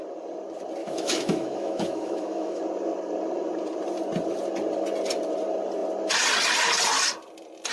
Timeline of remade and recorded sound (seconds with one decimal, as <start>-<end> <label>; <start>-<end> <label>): 0.0-0.8 recorded; 0.8-2.6 remade; 2.6-7.7 recorded